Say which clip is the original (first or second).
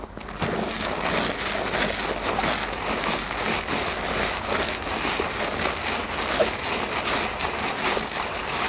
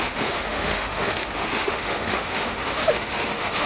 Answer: first